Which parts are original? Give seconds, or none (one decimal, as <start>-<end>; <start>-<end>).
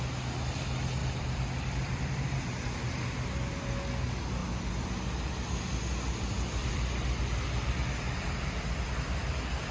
0.0-1.0; 2.4-6.6; 8.4-9.7